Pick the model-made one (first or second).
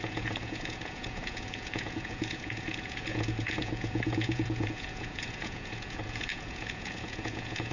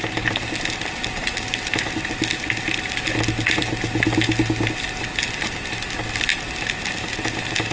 first